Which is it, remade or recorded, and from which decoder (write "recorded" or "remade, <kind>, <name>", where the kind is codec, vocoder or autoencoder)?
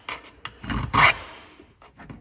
recorded